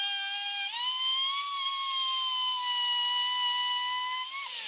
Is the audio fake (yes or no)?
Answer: no